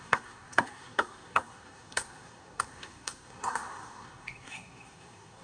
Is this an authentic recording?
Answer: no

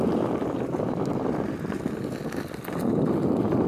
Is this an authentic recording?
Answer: yes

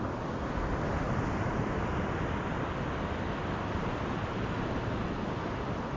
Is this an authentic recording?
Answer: yes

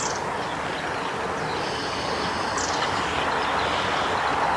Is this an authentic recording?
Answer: yes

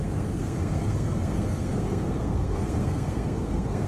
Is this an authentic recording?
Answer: no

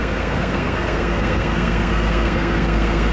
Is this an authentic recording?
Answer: no